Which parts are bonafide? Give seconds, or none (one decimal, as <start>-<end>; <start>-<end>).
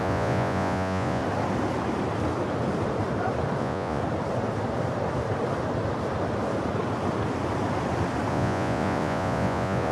1.2-3.6; 4.0-8.3